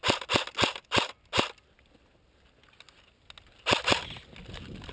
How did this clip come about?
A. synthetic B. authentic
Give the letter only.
B